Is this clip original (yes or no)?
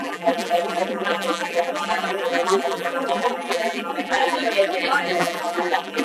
no